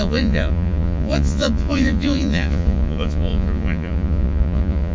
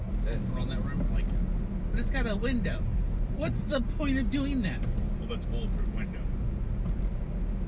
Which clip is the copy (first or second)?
first